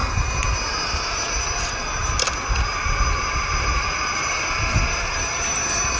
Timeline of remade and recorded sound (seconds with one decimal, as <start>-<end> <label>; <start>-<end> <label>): 0.0-6.0 recorded